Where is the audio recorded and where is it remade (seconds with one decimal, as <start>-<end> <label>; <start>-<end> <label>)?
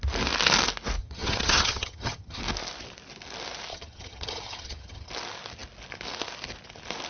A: 0.0-1.0 recorded; 1.0-2.4 remade; 2.4-3.7 recorded; 3.7-5.1 remade; 5.1-7.1 recorded